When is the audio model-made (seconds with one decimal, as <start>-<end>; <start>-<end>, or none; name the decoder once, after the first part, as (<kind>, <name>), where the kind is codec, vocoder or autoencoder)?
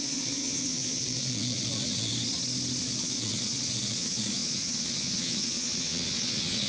0.0-2.1 (vocoder, Vocos); 2.8-6.7